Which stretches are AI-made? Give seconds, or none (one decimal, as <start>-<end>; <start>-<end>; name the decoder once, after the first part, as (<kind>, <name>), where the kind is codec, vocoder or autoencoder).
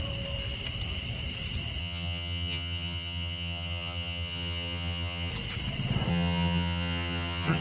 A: 1.8-5.3 (vocoder, HiFi-GAN); 6.1-7.6